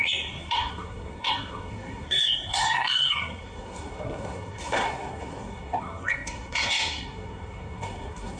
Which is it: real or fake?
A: fake